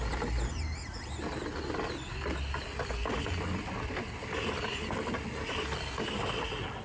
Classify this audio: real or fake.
real